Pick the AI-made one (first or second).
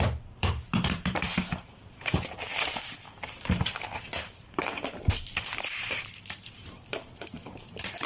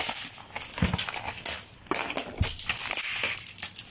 first